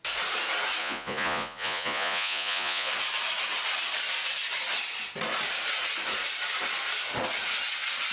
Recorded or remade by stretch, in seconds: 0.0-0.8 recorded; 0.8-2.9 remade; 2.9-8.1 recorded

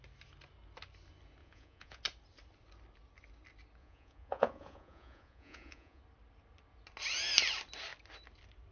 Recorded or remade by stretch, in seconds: 0.0-1.4 recorded; 1.4-2.0 remade; 2.0-3.8 recorded; 3.8-6.0 remade; 6.0-8.7 recorded

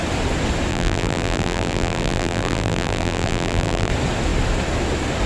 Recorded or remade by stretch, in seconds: 0.0-0.7 recorded; 0.7-3.9 remade; 3.9-5.3 recorded

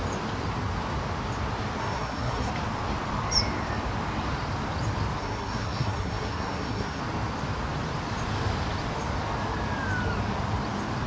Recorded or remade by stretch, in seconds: 0.0-1.8 recorded; 1.8-2.5 remade; 2.5-5.2 recorded; 5.2-7.0 remade; 7.0-11.1 recorded

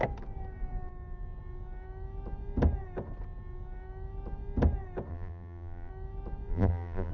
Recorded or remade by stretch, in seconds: 0.0-5.1 recorded; 5.1-5.9 remade; 5.9-6.5 recorded; 6.5-7.1 remade

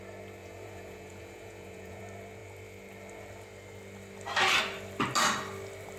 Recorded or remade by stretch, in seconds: 0.0-0.4 recorded; 0.4-2.0 remade; 2.0-6.0 recorded

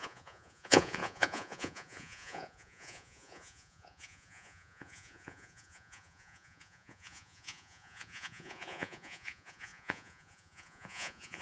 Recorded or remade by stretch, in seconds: 0.0-11.4 remade